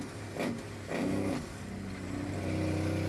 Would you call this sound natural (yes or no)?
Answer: yes